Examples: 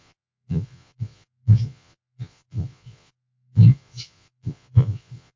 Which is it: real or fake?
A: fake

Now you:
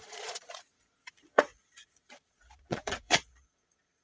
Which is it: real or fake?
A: fake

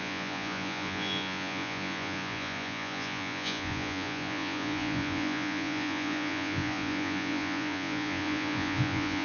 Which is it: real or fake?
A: fake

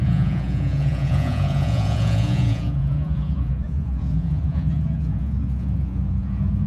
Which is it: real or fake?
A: fake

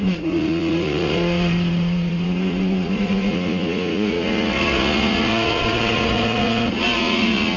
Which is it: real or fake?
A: fake